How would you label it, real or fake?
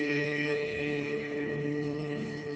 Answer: fake